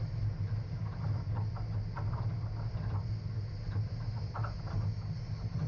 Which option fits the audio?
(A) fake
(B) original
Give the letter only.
B